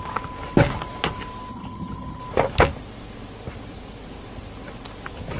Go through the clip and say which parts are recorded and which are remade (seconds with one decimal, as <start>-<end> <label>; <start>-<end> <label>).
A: 0.0-1.5 recorded; 1.5-2.2 remade; 2.2-5.4 recorded